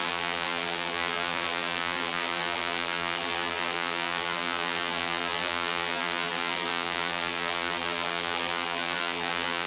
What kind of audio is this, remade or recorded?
remade